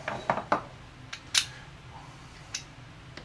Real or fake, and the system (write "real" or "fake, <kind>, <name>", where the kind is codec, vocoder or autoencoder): real